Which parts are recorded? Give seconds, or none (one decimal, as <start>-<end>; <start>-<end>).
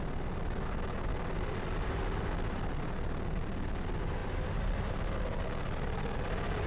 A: 0.0-6.7